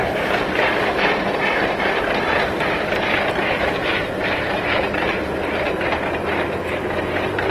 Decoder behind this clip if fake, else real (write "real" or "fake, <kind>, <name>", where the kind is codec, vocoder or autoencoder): fake, vocoder, BigVGAN v2